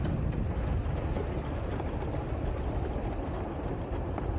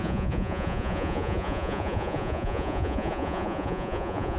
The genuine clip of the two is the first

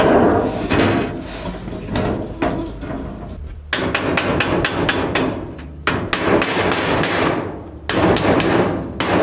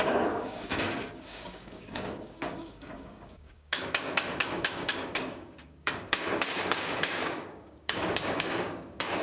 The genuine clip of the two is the first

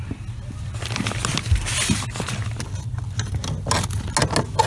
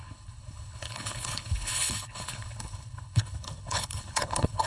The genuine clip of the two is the first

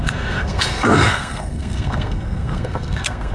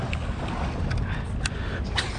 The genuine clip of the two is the second